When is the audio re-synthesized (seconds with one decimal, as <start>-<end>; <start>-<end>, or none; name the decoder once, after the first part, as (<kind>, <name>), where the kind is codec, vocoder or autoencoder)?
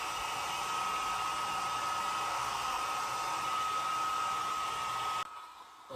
2.3-2.8 (codec, SNAC)